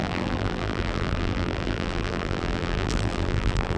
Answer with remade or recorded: remade